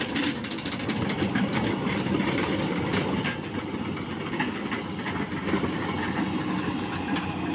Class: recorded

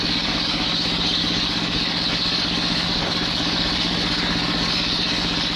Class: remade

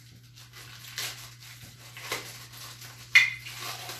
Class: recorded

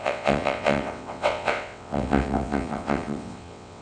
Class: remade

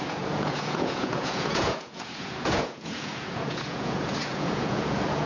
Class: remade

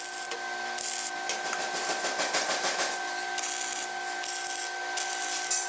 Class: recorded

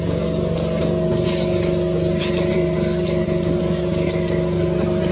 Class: recorded